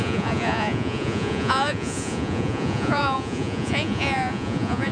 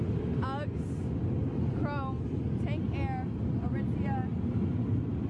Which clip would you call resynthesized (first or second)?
first